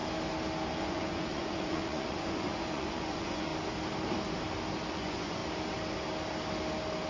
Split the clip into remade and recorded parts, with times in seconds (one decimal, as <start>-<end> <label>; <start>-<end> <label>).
0.0-0.8 recorded; 0.8-3.5 remade; 3.5-4.9 recorded; 4.9-5.4 remade; 5.4-7.1 recorded